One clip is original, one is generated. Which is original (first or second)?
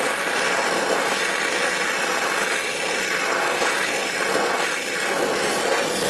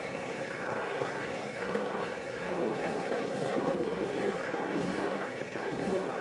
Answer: first